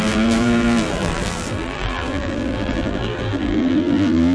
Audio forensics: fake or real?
fake